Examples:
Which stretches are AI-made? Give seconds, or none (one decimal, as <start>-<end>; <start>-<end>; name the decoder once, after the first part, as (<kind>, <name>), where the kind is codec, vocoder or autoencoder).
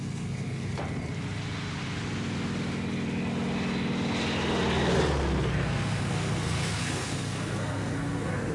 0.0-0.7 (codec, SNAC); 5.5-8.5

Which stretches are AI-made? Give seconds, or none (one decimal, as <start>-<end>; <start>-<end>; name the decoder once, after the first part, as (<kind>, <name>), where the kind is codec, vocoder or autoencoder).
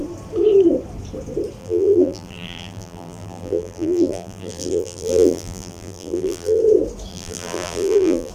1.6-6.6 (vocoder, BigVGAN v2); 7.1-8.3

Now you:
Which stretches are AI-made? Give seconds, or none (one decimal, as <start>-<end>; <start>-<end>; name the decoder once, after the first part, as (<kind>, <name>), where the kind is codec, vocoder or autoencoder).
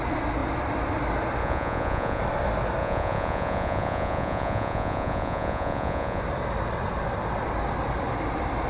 1.4-2.2 (vocoder, Vocos); 2.8-6.2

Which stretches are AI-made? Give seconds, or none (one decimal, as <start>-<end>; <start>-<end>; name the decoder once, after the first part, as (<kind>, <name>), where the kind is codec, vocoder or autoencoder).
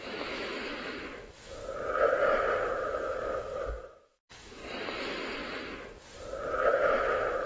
0.0-1.6 (autoencoder, DAC-VAE); 2.6-4.6; 6.7-7.5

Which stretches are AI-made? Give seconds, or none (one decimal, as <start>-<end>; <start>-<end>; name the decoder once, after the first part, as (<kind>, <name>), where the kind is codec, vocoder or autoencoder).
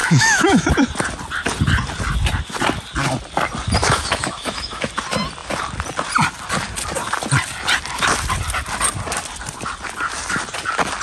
0.0-0.7 (autoencoder, DAC-VAE); 3.8-4.9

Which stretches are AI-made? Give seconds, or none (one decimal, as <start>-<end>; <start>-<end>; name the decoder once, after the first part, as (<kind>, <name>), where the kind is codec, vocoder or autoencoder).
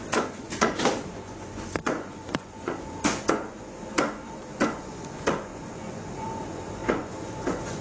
0.0-7.8 (vocoder, Vocos)